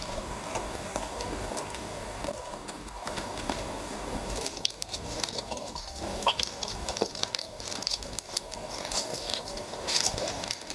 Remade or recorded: remade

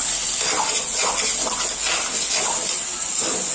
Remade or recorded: recorded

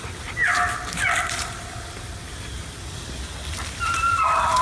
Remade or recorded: recorded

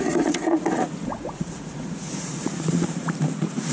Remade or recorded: remade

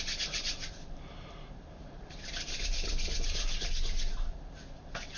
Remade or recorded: recorded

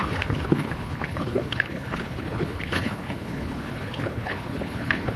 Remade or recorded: remade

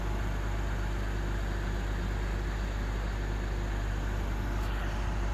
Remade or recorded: recorded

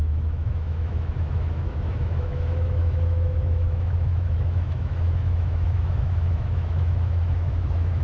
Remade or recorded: remade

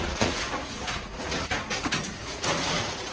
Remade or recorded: remade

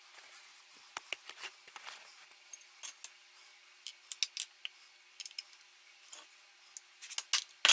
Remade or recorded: recorded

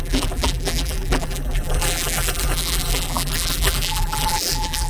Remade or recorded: remade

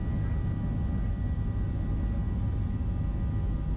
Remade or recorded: recorded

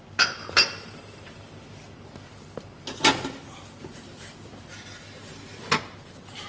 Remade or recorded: recorded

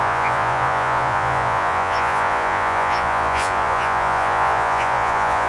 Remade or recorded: remade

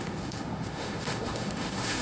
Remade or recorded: remade